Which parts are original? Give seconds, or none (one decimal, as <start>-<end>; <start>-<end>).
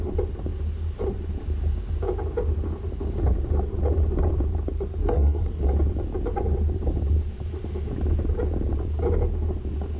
0.0-5.0; 5.6-10.0